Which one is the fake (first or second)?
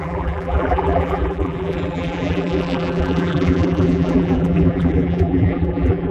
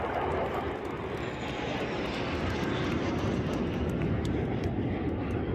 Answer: first